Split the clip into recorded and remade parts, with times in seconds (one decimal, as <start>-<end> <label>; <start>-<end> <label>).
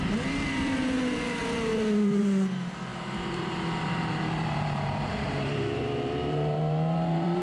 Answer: 0.0-7.4 remade